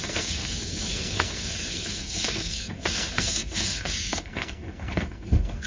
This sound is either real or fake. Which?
fake